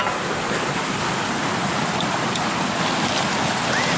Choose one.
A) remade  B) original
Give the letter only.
B